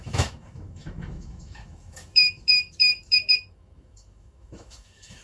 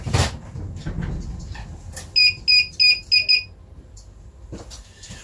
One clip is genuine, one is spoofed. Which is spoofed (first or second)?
first